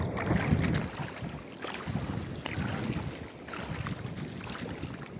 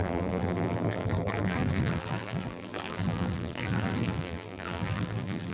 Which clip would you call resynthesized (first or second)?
second